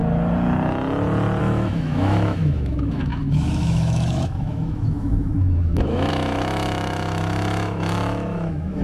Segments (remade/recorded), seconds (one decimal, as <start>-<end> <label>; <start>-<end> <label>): 0.0-1.4 recorded; 1.4-8.8 remade